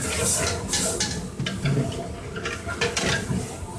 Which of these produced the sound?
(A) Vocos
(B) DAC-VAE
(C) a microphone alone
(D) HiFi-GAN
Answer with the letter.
C